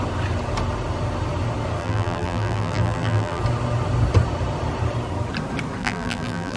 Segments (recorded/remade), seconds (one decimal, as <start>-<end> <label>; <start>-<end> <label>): 0.0-1.8 recorded; 1.8-3.4 remade; 3.4-5.8 recorded; 5.8-6.6 remade

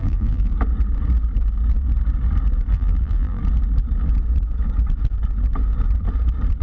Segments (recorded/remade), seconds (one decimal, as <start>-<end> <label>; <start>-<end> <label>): 0.0-0.5 remade; 0.5-2.7 recorded; 2.7-3.4 remade; 3.4-6.6 recorded

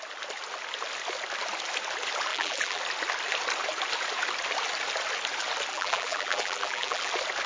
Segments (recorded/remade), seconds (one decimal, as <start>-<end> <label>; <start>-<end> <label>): 0.0-2.3 recorded; 2.3-2.8 remade; 2.8-5.7 recorded; 5.7-7.1 remade; 7.1-7.5 recorded

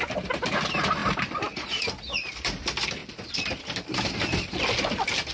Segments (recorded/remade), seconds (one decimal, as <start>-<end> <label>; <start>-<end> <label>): 0.0-1.0 recorded; 1.0-1.8 remade; 1.8-5.3 recorded

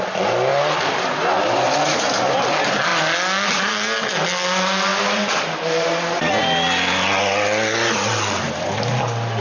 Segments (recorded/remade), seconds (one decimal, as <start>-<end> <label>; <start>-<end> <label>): 0.0-4.9 recorded; 4.9-6.3 remade; 6.3-9.4 recorded

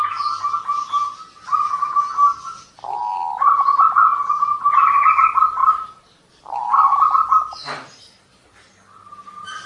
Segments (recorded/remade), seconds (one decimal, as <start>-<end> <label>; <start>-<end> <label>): 0.0-5.6 recorded; 5.6-7.3 remade; 7.3-9.7 recorded